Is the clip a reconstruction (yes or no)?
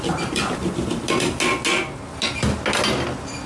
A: no